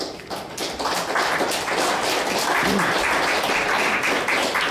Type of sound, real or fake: real